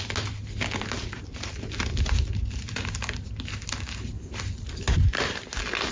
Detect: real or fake real